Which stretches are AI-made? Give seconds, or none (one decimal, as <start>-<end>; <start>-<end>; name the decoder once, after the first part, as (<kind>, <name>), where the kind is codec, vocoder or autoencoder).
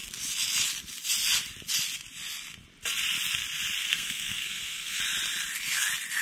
3.8-5.0 (codec, SNAC)